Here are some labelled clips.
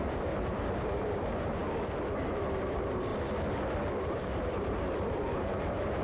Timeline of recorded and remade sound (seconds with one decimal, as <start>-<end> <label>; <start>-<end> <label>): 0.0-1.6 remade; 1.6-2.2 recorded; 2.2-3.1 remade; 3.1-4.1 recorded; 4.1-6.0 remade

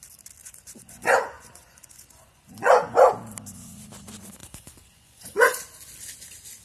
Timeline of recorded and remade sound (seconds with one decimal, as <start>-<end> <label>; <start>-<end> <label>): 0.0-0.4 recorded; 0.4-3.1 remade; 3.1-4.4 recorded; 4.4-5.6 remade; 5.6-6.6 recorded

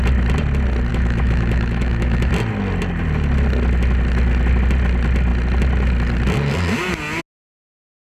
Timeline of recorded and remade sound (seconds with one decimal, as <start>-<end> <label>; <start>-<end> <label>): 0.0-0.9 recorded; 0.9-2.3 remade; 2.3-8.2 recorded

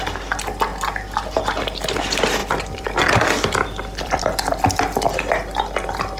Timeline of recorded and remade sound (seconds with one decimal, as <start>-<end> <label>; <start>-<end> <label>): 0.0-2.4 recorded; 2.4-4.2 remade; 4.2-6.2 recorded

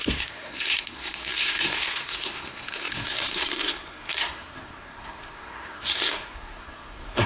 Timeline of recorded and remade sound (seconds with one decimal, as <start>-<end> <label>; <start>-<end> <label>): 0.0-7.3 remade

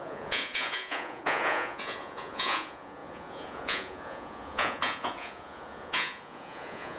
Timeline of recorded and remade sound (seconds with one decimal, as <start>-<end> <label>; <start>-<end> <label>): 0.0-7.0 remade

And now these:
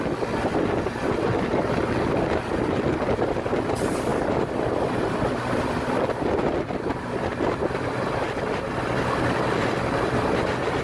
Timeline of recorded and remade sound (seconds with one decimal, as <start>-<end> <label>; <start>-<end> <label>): 0.0-10.8 recorded